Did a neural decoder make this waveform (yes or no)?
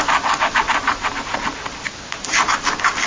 no